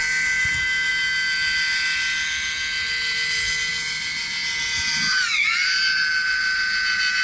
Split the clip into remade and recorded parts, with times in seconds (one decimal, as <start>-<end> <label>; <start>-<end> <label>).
0.0-5.3 recorded; 5.3-5.8 remade; 5.8-7.2 recorded